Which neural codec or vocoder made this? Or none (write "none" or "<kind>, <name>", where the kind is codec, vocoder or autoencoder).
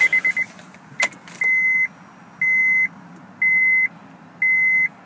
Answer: none